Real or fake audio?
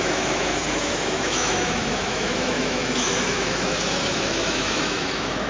fake